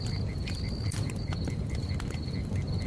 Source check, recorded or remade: recorded